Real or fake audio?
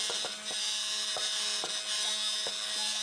real